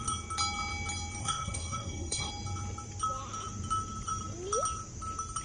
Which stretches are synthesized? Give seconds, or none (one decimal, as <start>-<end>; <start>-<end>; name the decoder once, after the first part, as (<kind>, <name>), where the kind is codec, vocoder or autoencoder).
1.2-2.3 (codec, SNAC)